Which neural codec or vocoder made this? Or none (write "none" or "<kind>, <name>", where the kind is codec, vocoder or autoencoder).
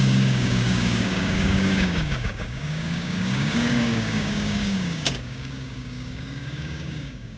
codec, DAC